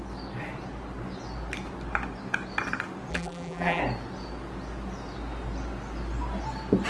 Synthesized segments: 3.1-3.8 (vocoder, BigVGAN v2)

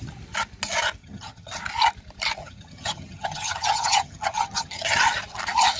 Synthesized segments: 1.0-1.6 (vocoder, HiFi-GAN); 2.4-5.0